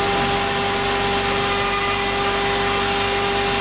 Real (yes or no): yes